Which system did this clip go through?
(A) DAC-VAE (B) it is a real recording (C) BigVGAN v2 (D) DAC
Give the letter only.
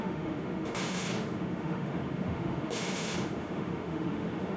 A